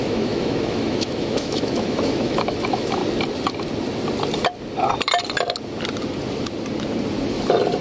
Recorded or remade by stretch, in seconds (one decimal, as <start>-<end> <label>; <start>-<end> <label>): 0.0-3.0 remade; 3.0-7.8 recorded